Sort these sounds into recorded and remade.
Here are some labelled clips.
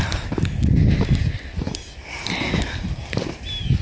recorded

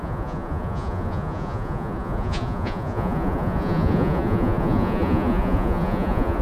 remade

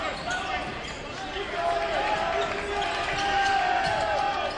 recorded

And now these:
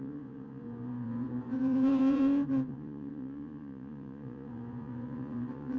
remade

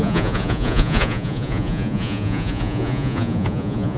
remade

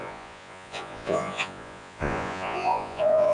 remade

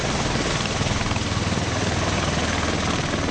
recorded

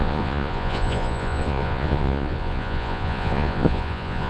remade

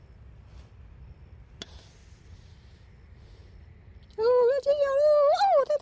recorded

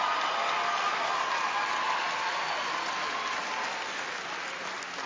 recorded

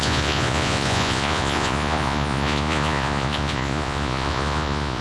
remade